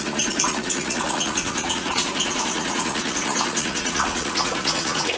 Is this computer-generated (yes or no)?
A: yes